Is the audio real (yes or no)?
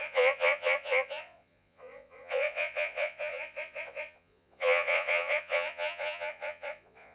no